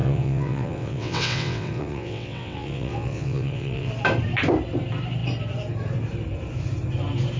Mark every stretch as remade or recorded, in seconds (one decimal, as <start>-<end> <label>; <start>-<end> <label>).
0.0-3.9 remade; 3.9-7.4 recorded